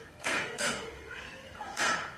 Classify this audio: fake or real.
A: fake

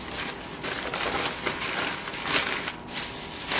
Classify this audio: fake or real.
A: real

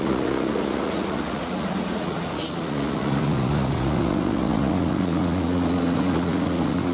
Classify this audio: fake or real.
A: fake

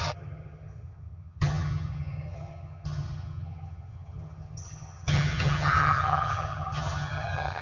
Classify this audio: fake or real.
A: fake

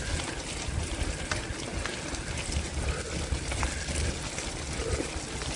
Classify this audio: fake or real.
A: real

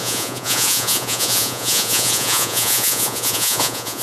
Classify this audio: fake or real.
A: fake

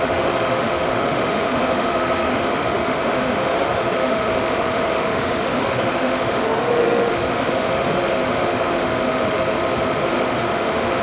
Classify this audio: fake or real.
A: fake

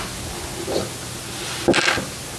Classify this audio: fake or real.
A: real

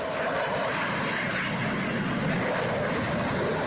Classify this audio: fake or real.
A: real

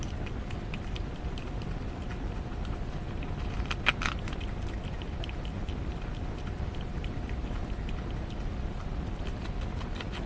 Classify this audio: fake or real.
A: real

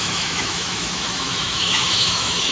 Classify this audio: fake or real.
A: fake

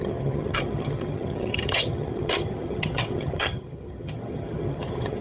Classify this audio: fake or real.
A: fake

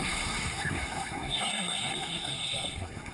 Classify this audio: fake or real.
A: fake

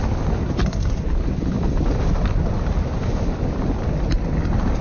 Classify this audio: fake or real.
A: real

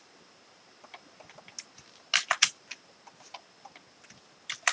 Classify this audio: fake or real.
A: real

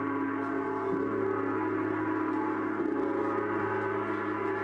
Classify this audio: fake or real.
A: real